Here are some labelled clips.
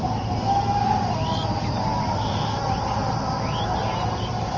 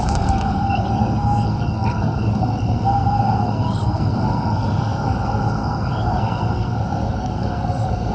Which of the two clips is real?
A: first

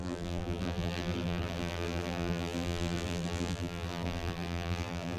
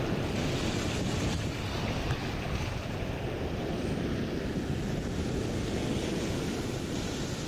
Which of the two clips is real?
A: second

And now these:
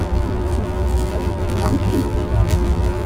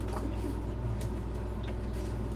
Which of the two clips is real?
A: second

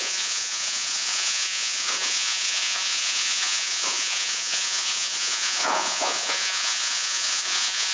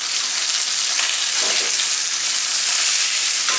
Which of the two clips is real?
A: second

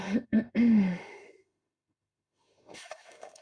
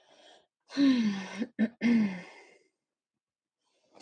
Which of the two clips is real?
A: second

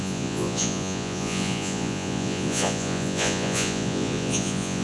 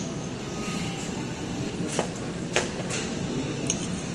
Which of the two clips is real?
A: second